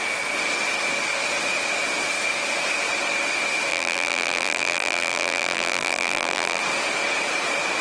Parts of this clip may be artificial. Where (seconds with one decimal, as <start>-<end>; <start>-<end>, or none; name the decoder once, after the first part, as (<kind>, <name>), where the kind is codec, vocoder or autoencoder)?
3.7-6.6 (vocoder, BigVGAN v2)